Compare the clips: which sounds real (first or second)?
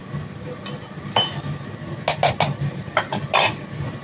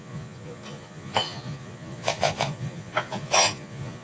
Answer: first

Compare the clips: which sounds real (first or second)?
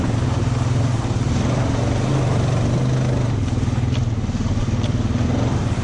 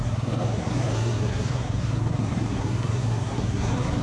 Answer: first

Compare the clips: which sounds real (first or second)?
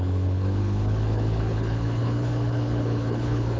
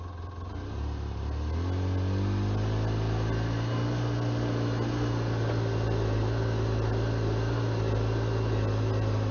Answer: second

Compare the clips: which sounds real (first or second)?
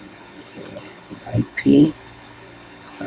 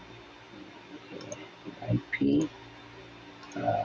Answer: second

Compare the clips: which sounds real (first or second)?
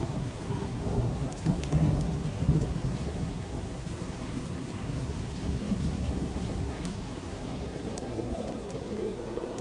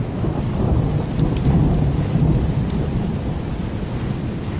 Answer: second